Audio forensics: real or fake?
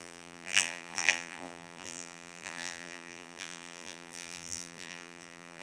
fake